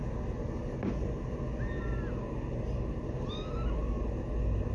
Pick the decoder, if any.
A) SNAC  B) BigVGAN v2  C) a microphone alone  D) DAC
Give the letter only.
C